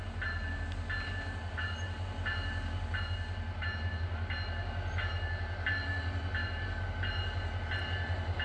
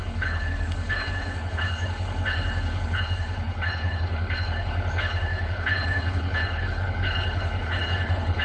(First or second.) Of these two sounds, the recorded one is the first